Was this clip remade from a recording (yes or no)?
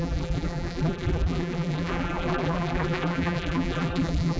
yes